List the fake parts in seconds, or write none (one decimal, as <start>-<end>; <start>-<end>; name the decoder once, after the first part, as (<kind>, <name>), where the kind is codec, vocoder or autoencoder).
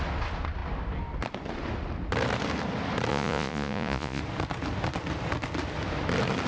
3.1-4.2 (vocoder, Vocos)